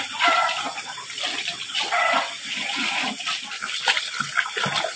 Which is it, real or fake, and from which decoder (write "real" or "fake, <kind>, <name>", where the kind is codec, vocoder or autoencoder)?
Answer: real